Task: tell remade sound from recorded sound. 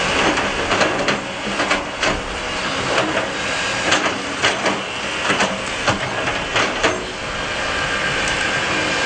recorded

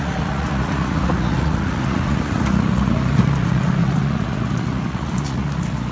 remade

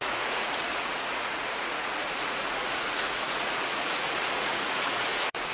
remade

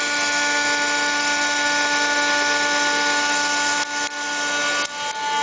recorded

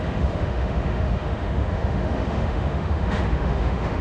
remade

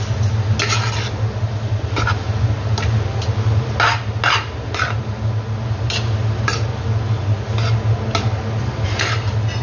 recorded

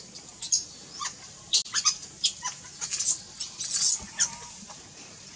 recorded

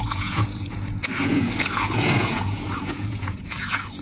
remade